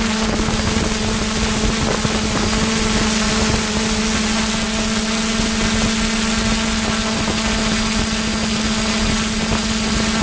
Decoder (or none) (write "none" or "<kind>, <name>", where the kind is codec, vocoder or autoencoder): none